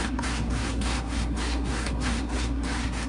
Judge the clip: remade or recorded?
remade